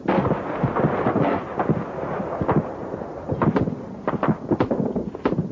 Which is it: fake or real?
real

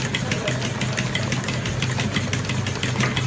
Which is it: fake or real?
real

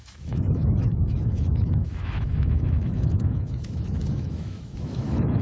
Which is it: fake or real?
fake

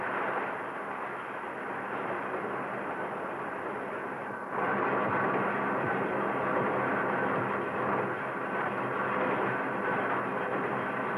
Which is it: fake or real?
real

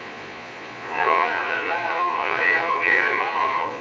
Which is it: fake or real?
fake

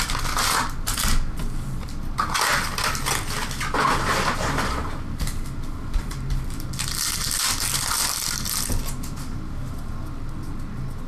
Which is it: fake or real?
real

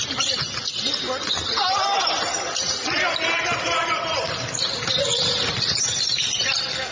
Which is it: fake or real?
real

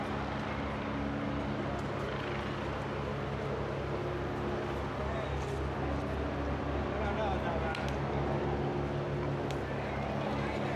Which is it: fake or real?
real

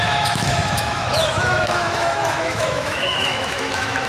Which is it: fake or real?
fake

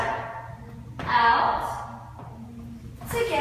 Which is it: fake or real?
real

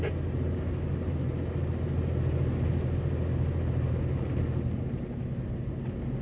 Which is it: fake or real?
real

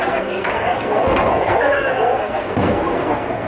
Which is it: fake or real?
fake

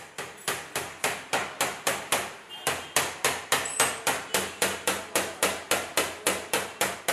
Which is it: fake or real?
real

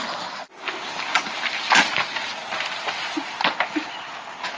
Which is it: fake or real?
real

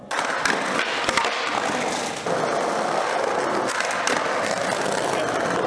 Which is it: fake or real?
real